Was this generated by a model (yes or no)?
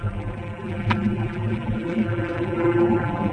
yes